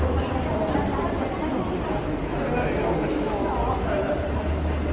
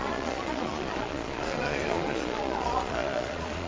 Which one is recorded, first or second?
first